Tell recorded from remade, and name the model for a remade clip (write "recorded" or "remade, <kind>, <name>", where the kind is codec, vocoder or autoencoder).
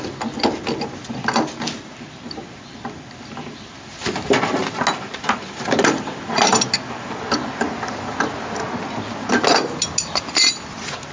recorded